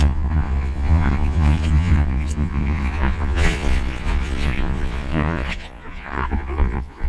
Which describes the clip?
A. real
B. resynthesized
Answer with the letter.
B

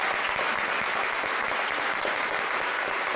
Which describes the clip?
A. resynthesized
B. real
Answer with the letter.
B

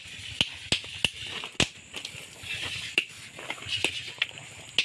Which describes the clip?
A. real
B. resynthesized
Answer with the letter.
A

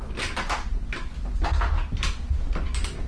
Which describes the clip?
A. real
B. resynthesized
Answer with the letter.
A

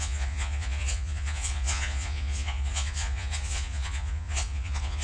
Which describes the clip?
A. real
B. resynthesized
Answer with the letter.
B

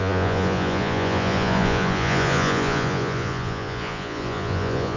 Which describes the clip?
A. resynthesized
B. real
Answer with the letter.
A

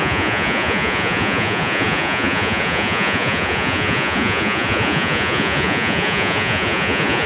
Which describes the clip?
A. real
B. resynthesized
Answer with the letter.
B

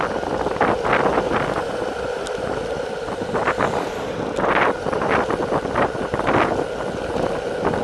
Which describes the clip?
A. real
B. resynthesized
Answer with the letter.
A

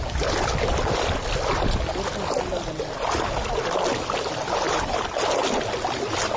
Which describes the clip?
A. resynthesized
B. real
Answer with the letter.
B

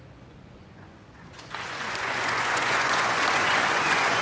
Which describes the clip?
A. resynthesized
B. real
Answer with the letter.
A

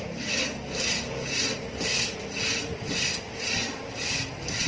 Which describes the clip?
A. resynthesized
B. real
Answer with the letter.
B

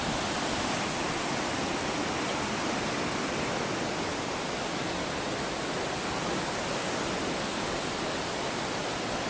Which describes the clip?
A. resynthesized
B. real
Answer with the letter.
B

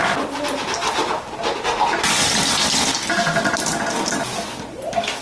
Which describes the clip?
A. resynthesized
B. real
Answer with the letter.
B